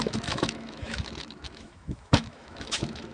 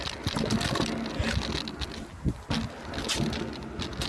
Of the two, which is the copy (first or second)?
first